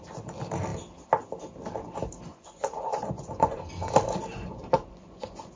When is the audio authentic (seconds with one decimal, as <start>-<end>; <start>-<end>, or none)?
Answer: 0.0-2.3; 3.6-4.3